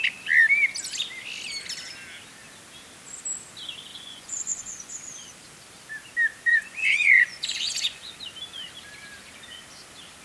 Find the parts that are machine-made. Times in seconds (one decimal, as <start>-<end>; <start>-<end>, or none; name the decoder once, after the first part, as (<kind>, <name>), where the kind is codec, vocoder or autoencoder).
3.9-5.0 (vocoder, Vocos); 6.5-8.1